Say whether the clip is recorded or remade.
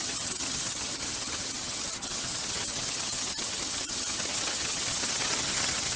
remade